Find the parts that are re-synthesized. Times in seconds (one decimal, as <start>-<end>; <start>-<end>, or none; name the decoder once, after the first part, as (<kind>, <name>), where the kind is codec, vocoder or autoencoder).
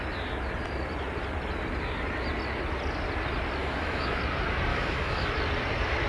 3.6-4.2 (autoencoder, DAC-VAE); 4.7-5.3